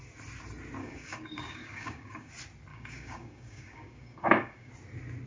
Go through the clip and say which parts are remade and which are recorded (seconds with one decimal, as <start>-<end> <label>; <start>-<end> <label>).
0.0-0.8 recorded; 0.8-2.3 remade; 2.3-2.7 recorded; 2.7-4.7 remade; 4.7-5.3 recorded